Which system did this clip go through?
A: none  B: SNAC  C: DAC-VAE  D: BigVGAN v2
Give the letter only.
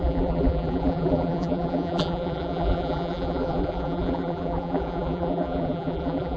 D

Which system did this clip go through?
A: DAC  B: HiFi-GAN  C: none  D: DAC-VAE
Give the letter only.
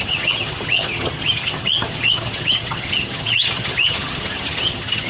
B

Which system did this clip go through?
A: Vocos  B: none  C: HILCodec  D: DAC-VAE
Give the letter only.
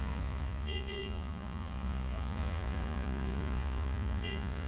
A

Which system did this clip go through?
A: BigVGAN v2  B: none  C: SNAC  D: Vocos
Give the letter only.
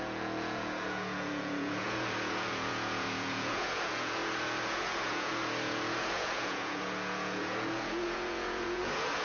D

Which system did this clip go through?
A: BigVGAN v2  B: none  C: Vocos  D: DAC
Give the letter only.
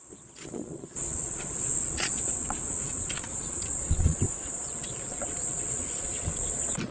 C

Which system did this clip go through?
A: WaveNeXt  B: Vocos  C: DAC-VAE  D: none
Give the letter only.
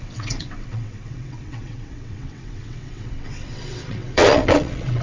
A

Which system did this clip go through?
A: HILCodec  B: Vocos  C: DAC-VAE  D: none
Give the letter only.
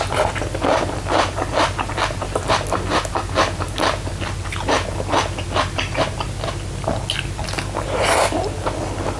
D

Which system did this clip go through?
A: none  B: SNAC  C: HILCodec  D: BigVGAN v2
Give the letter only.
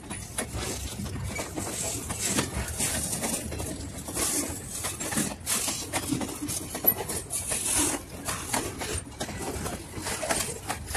A